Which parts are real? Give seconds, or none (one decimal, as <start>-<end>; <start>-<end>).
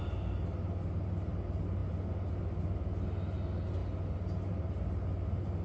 0.0-5.6